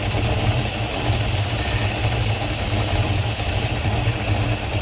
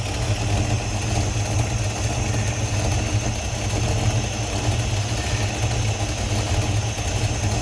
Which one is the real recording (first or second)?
second